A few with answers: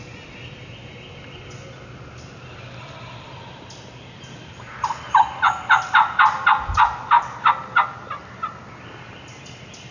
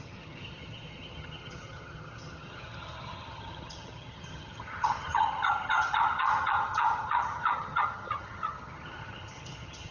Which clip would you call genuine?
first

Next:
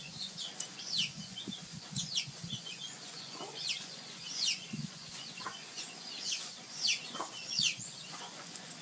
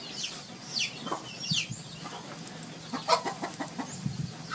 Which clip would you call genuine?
second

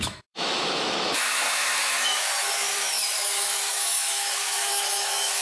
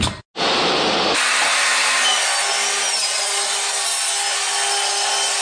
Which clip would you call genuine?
second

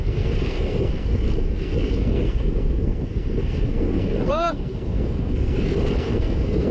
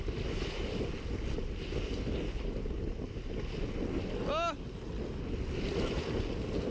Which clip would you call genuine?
second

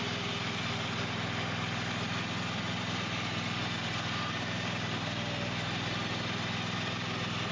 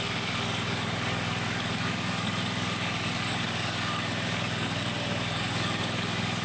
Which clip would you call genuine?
first